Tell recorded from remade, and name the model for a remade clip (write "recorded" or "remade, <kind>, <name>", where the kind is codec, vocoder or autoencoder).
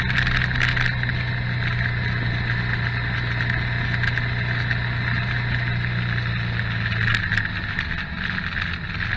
recorded